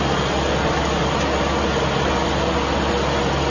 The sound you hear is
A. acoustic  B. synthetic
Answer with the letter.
A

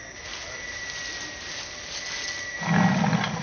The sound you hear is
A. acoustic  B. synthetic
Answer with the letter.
A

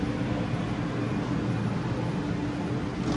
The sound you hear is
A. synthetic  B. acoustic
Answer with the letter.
B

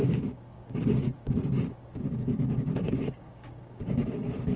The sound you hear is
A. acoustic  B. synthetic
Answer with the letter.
B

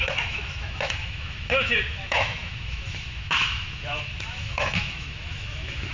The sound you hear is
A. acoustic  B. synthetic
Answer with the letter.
B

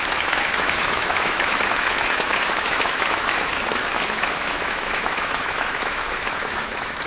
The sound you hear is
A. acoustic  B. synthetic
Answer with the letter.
B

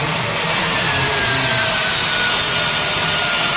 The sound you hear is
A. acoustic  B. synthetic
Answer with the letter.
A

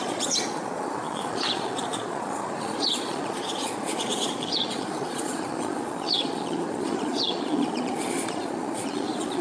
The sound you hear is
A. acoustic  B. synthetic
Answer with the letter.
B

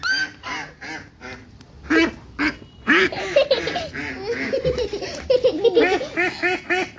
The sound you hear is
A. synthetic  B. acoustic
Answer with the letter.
B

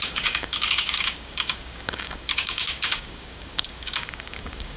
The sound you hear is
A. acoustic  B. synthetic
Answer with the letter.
B